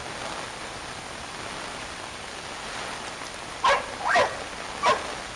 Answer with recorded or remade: recorded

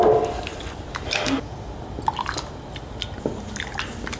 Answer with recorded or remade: recorded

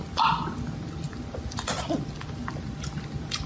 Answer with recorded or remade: recorded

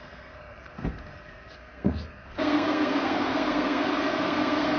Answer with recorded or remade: remade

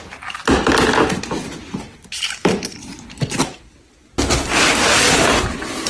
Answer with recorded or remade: recorded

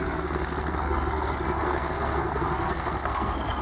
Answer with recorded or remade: remade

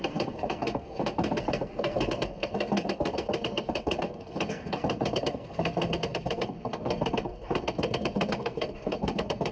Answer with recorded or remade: remade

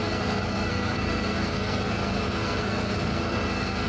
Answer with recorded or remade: remade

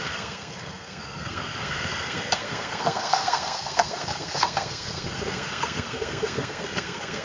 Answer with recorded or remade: remade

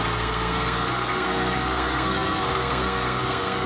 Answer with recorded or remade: remade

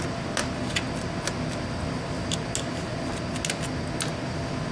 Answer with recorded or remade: recorded